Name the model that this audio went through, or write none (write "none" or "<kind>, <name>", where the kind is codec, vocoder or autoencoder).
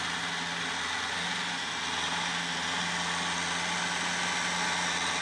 none